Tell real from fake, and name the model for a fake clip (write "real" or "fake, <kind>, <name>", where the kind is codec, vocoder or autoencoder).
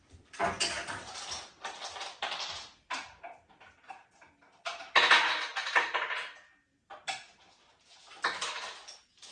real